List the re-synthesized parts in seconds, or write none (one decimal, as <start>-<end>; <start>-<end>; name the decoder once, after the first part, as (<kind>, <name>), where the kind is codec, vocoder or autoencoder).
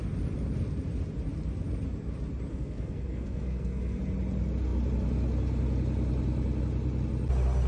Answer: 2.5-4.0 (codec, SNAC)